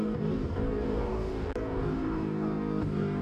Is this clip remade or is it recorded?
remade